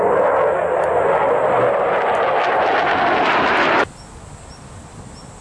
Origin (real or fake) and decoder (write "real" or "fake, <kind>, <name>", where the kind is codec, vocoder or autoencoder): real